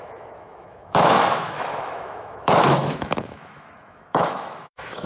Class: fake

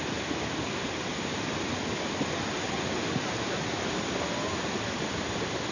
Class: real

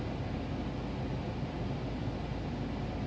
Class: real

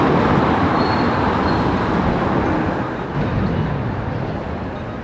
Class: real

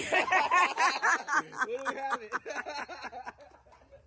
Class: real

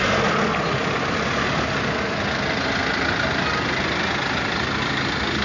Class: real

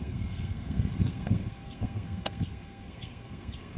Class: fake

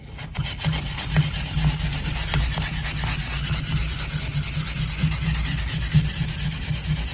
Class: real